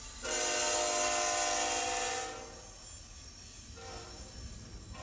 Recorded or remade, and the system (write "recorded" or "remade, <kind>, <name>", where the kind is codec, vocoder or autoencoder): recorded